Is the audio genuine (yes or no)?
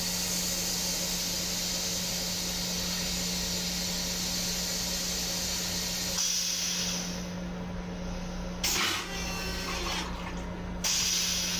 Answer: yes